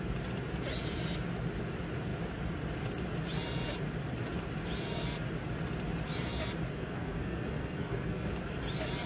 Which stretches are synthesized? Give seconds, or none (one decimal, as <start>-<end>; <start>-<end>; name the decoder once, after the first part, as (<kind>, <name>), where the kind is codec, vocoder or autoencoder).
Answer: 6.7-8.3 (codec, SNAC)